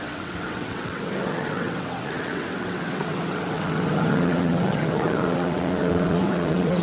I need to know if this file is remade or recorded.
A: remade